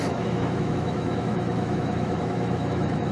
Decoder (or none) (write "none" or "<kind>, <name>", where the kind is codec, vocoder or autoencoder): autoencoder, DAC-VAE